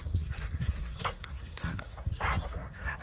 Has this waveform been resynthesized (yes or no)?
yes